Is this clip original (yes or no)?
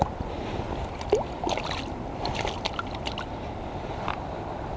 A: no